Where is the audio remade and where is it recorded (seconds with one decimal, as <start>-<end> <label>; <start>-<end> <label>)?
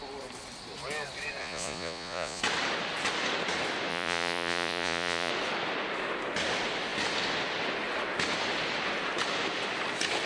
0.0-1.4 recorded; 1.4-2.4 remade; 2.4-3.9 recorded; 3.9-5.3 remade; 5.3-10.3 recorded